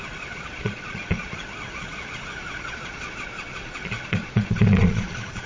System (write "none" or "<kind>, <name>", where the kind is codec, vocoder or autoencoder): vocoder, Vocos